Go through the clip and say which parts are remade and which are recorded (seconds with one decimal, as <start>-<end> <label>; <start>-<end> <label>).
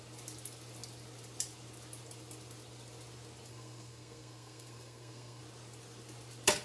0.0-3.5 recorded; 3.5-5.4 remade; 5.4-6.6 recorded